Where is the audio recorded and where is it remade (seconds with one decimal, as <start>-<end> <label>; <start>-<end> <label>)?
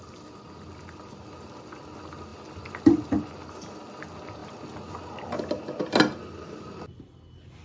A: 0.0-7.6 recorded